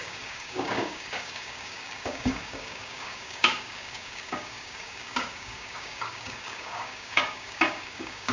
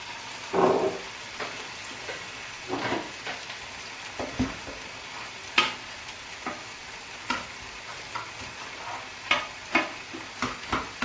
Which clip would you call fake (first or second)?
first